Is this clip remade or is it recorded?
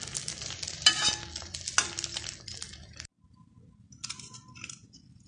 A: recorded